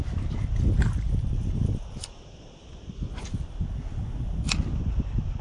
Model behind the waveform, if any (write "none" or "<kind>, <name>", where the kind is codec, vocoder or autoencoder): none